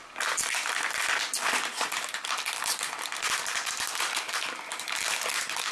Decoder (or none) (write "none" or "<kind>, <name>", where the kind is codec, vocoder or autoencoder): vocoder, BigVGAN v2